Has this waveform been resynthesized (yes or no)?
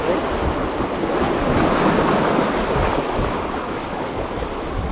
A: no